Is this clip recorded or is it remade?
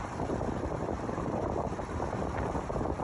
remade